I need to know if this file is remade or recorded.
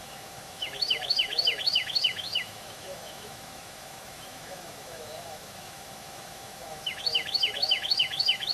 remade